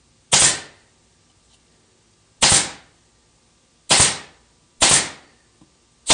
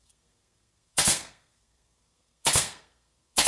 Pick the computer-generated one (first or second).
second